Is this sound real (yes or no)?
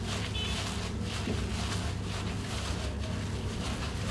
yes